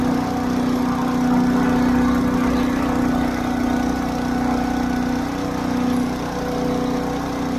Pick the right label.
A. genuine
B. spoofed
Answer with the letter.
A